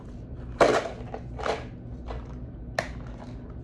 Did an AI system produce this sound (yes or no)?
no